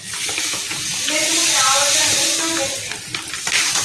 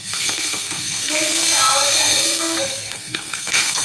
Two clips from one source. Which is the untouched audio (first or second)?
first